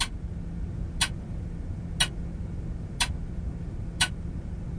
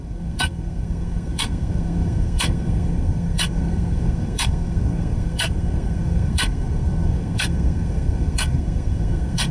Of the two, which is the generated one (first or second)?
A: second